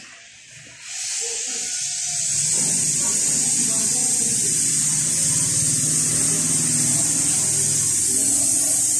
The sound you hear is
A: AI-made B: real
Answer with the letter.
B